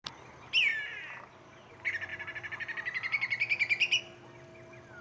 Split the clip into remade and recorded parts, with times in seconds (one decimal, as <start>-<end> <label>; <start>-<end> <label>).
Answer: 0.0-0.7 recorded; 0.7-1.7 remade; 1.7-5.0 recorded